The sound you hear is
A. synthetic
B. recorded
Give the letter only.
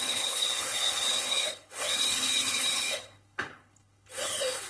A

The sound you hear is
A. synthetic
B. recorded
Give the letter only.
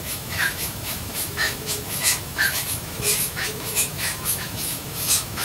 A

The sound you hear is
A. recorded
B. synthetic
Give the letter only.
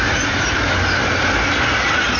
A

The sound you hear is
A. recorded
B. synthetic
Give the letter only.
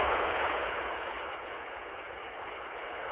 B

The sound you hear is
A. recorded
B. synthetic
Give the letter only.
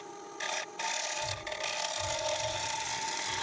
A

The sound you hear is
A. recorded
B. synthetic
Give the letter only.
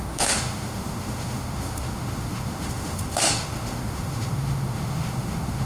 B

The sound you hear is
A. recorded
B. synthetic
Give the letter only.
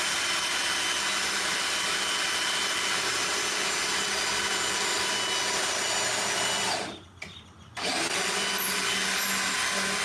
A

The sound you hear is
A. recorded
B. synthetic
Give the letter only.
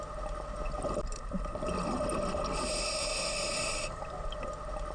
A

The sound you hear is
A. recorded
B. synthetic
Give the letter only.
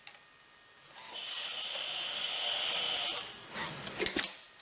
A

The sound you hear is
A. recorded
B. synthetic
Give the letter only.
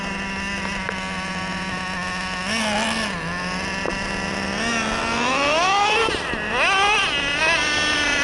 A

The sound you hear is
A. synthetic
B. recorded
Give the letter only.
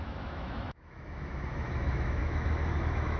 A